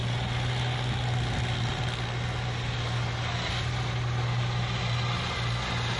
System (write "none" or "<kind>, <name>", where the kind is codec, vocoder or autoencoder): none